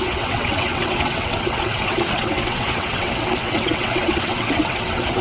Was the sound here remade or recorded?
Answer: remade